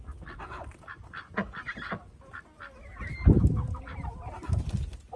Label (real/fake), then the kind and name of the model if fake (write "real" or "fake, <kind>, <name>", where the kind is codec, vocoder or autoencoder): real